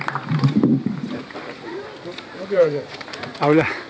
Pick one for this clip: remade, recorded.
remade